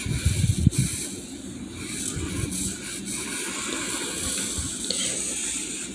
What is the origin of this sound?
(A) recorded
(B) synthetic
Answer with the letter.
A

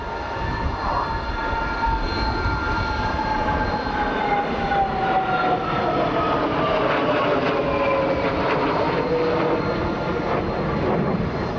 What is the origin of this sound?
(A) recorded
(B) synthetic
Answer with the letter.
A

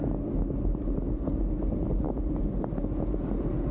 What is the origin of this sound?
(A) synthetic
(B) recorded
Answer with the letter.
B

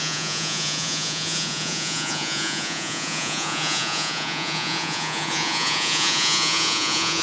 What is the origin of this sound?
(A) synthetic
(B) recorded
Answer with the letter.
A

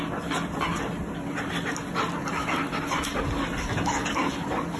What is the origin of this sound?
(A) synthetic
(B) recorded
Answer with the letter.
B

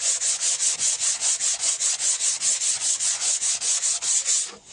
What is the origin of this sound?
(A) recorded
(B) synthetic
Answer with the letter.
B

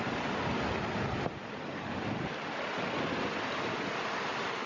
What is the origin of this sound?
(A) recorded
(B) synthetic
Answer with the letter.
A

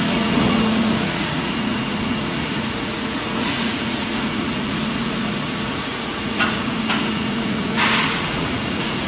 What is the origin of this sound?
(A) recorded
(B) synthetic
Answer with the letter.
B